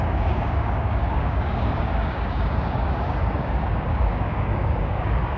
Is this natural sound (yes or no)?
no